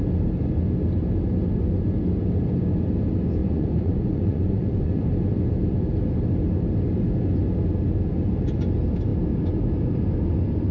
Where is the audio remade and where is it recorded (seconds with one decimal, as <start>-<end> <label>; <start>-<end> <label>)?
0.0-3.4 recorded; 3.4-5.0 remade; 5.0-10.7 recorded